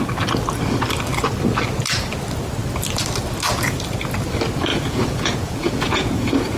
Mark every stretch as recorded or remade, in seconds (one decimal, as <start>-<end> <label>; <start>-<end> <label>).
0.0-4.7 recorded; 4.7-6.6 remade